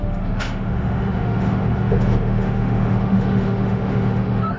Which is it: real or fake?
fake